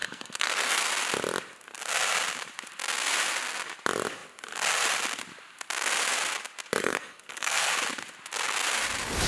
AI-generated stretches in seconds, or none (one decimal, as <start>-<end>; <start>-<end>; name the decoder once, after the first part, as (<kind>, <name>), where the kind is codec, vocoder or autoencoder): 0.0-0.9 (codec, SNAC); 6.8-7.7